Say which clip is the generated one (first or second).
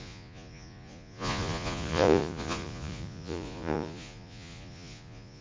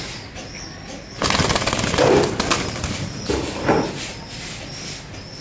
first